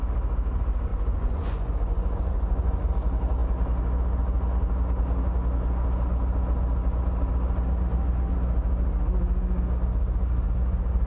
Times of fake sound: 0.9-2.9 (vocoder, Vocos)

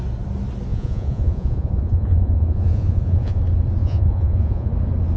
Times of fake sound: 0.7-3.4 (vocoder, Vocos); 3.8-4.7

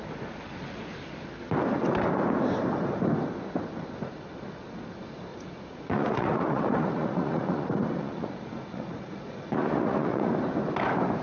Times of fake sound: 5.3-10.3 (vocoder, Vocos)

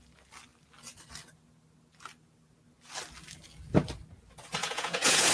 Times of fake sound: 4.6-5.3 (vocoder, Vocos)

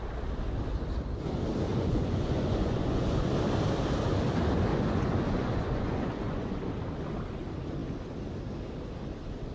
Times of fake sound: 1.7-3.3 (vocoder, Vocos); 4.7-6.6

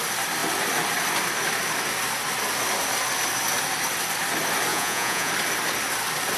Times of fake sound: 4.7-5.3 (vocoder, Vocos)

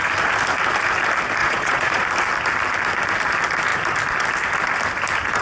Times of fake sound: 1.4-2.1 (vocoder, Vocos)